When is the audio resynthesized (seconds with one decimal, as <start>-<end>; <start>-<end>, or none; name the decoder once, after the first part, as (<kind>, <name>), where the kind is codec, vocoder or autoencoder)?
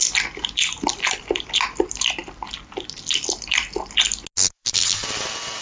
none